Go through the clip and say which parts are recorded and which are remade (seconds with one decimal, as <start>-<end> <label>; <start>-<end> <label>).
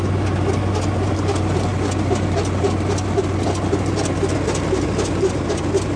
0.0-6.0 recorded